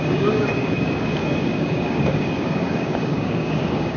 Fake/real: fake